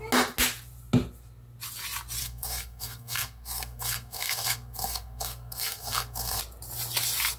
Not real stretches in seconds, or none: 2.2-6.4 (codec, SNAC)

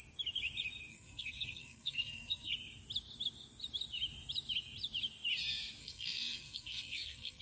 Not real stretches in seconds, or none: 0.9-2.5 (codec, SNAC); 5.8-7.4

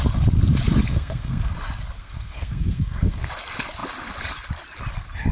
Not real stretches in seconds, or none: 0.9-1.5 (codec, SNAC); 2.0-3.3